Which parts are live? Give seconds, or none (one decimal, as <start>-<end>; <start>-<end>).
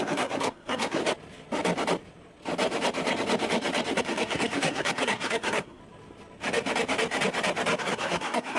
1.0-4.0; 5.8-7.8